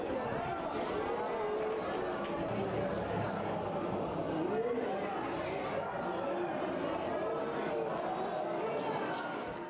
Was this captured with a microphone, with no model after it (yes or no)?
yes